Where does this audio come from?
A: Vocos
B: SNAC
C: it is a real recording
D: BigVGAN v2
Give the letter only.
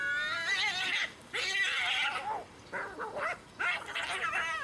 C